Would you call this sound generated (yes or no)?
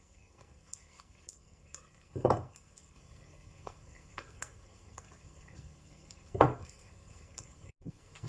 yes